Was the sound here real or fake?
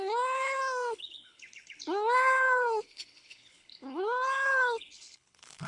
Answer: fake